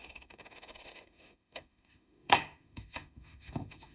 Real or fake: fake